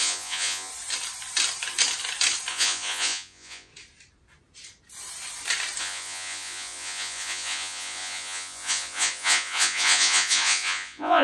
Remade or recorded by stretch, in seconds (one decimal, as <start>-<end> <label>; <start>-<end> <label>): 0.0-0.7 remade; 0.7-2.5 recorded; 2.5-3.7 remade; 3.7-5.8 recorded; 5.8-11.2 remade